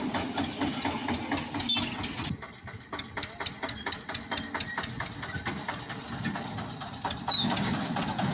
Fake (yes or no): no